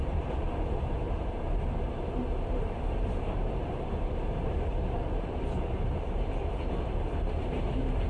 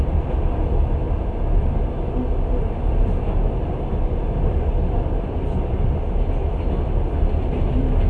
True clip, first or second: second